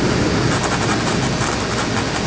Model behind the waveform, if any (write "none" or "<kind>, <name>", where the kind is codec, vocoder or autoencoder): none